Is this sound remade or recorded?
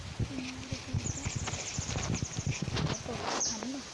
recorded